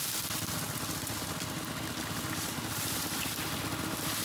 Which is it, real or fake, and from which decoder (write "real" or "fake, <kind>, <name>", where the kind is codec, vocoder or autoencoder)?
real